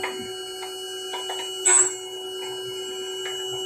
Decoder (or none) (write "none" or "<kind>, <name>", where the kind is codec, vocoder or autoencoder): none